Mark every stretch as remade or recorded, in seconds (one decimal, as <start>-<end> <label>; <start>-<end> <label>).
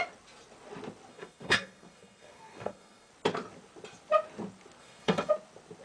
0.0-1.1 recorded; 1.1-3.1 remade; 3.1-4.8 recorded; 4.8-5.3 remade; 5.3-5.8 recorded